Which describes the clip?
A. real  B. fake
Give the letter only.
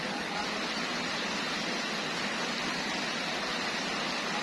A